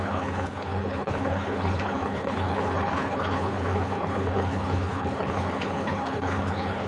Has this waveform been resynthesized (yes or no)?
yes